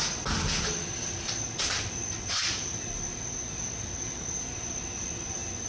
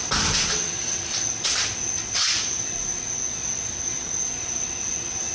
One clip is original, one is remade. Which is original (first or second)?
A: second